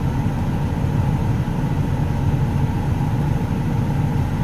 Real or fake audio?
real